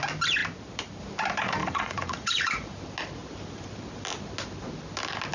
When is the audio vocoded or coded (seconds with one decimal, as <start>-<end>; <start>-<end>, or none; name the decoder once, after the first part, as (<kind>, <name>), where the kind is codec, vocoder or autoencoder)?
1.6-2.8 (vocoder, Vocos)